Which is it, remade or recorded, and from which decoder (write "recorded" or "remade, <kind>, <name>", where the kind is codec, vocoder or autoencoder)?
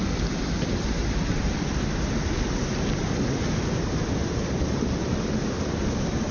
recorded